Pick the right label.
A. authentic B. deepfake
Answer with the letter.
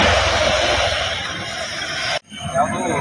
B